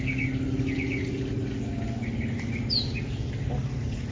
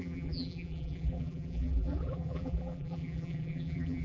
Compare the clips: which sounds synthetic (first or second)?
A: second